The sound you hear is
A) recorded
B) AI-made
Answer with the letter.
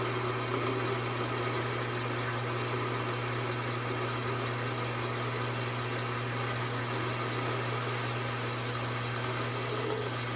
A